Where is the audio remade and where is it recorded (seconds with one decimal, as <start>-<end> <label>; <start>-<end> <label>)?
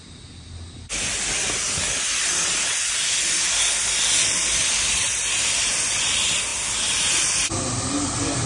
0.0-4.6 recorded; 4.6-5.2 remade; 5.2-8.5 recorded